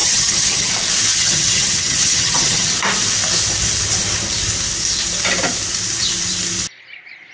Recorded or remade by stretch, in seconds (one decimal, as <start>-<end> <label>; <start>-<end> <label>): 0.0-0.7 remade; 0.7-1.1 recorded; 1.1-2.7 remade; 2.7-7.3 recorded